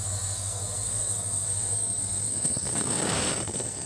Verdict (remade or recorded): remade